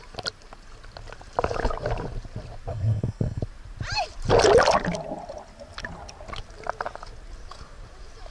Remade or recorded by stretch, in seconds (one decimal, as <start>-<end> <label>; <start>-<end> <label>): 0.0-2.7 recorded; 2.7-3.4 remade; 3.4-8.3 recorded